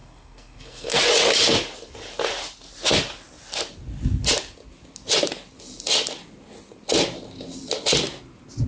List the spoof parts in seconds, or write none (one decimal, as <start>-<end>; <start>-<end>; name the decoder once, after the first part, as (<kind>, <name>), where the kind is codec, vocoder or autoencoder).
0.0-1.0 (codec, SNAC)